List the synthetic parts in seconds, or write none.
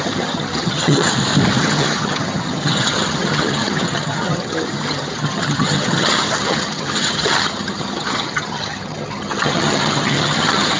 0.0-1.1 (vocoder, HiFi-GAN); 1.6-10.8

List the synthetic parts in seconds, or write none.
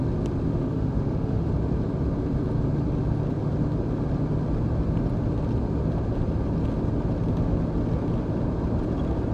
0.5-1.5 (autoencoder, DAC-VAE)